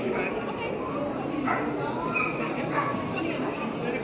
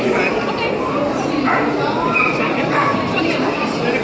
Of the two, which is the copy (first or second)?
second